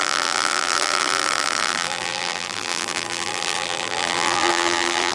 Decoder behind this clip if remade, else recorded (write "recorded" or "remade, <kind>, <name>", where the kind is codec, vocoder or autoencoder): remade, vocoder, BigVGAN v2